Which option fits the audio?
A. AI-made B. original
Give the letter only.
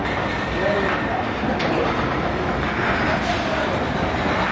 B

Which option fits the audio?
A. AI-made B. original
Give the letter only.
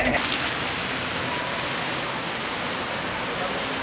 B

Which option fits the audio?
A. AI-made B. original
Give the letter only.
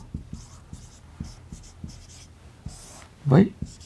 B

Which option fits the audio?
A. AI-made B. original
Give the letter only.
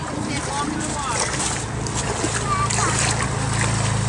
B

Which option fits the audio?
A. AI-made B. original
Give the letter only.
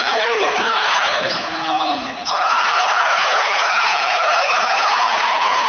A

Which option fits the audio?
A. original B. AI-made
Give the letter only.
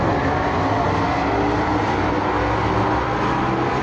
A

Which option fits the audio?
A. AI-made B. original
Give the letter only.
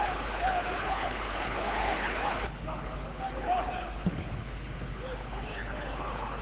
A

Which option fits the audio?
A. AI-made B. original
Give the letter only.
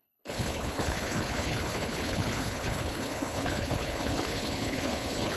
A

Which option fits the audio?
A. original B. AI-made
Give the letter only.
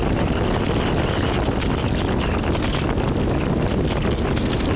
A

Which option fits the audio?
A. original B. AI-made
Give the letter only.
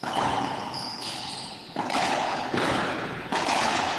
B